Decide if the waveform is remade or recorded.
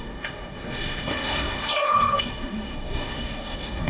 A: remade